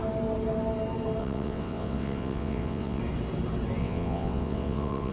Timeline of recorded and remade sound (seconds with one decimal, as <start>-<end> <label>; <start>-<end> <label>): 0.0-1.2 recorded; 1.2-3.0 remade; 3.0-3.8 recorded; 3.8-5.1 remade